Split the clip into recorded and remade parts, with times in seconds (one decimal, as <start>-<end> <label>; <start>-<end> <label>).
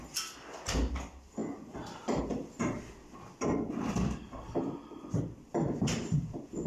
0.0-6.7 recorded